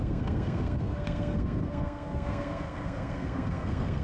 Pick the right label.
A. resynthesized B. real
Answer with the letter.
A